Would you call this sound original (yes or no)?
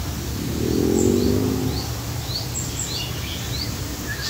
yes